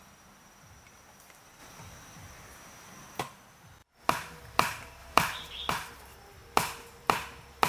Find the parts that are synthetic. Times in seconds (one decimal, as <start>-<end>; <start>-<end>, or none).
1.6-3.2; 5.0-5.7